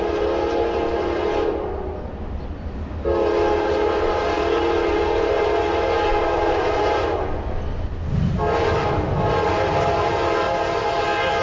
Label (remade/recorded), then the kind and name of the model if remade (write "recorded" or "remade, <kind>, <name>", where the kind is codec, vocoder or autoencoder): recorded